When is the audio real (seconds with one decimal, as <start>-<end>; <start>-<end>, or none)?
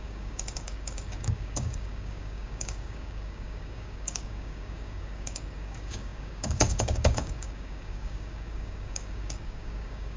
none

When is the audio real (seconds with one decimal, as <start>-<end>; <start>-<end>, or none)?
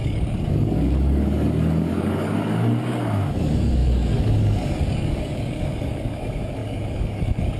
none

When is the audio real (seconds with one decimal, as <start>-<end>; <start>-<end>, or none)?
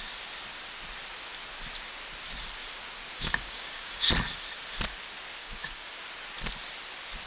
0.0-3.1; 4.1-5.4; 5.9-7.3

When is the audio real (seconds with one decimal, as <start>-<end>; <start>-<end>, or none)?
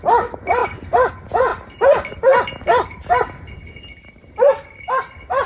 0.0-5.5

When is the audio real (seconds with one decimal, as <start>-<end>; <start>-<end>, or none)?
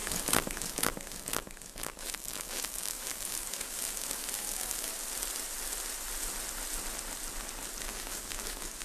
4.9-7.8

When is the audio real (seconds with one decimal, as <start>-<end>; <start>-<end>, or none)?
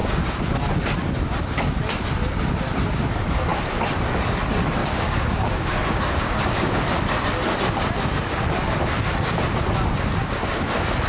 0.0-4.8; 6.8-11.1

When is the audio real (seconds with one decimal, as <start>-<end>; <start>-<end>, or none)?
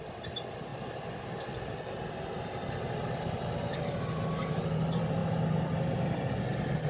0.0-6.9